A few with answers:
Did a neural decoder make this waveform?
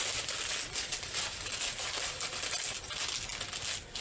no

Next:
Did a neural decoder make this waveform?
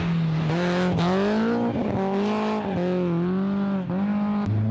no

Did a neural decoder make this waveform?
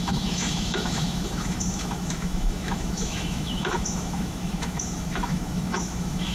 yes